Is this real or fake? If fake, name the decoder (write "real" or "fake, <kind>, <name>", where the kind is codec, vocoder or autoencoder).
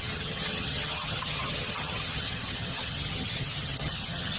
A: fake, vocoder, HiFi-GAN